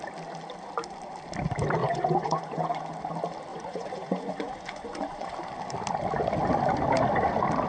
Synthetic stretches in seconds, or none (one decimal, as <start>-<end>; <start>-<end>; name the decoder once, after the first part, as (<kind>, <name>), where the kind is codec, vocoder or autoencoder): 1.8-2.8 (vocoder, Vocos); 3.5-5.3